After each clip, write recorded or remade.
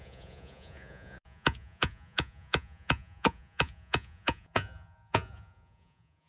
remade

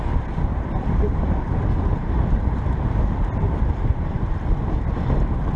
recorded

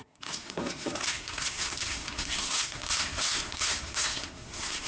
remade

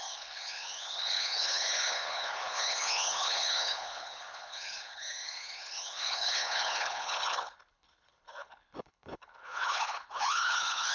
remade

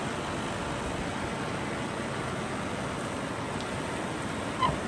recorded